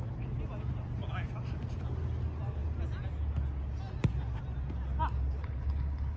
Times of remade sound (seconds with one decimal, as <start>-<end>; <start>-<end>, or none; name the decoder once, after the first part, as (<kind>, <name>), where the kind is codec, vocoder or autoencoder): 5.4-6.2 (codec, HILCodec)